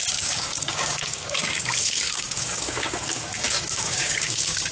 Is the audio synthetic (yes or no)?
yes